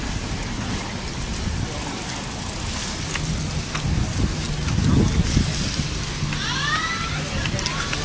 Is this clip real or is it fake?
real